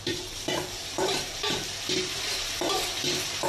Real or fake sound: fake